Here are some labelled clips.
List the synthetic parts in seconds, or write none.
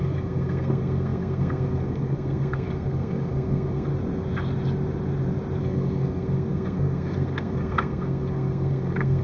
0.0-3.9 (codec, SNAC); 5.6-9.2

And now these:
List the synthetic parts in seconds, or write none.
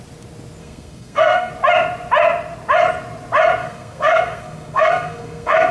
0.6-1.5 (codec, SNAC); 3.6-5.7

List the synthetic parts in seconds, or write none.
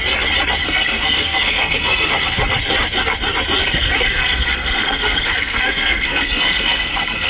0.6-2.1 (codec, SNAC); 3.6-7.3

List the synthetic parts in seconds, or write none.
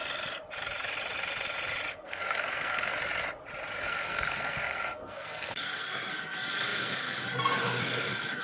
1.9-2.9 (codec, SNAC); 3.8-8.4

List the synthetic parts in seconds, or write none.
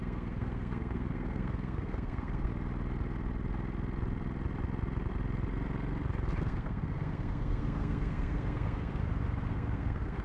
0.0-2.5 (codec, SNAC); 6.4-9.0; 9.5-10.2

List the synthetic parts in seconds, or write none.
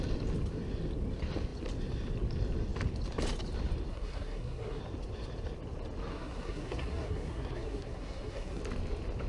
3.9-4.8 (codec, SNAC); 6.1-8.6